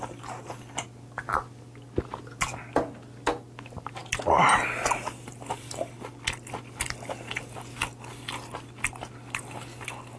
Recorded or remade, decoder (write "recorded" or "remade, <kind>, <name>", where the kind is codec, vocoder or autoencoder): recorded